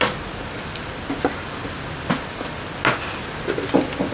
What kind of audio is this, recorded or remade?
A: recorded